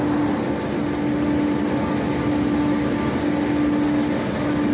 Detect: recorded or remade recorded